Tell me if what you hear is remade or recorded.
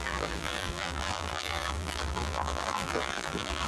remade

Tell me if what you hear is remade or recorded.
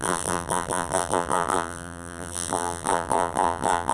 remade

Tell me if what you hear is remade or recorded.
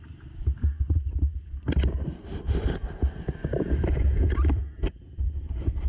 remade